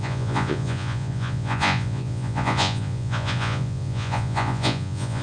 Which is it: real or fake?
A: fake